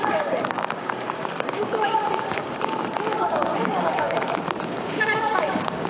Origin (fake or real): fake